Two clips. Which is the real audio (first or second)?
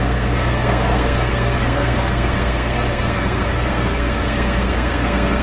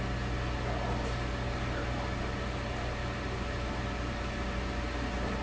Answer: second